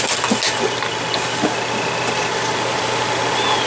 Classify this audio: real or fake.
real